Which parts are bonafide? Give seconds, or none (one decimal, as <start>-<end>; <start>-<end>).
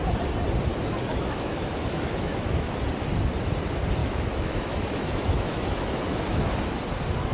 0.0-0.7; 2.7-4.0; 6.6-7.3